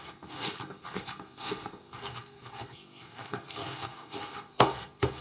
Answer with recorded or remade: remade